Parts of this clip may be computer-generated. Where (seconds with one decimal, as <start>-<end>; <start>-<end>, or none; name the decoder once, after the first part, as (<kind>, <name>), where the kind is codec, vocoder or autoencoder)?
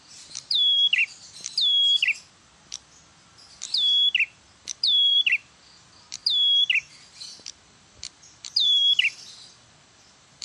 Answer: 0.0-1.0 (vocoder, BigVGAN v2); 4.6-6.2; 7.5-10.4